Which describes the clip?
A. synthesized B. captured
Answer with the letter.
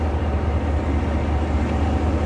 B